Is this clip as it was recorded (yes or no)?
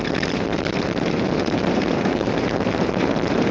no